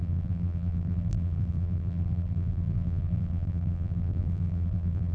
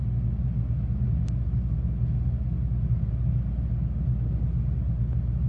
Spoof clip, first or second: first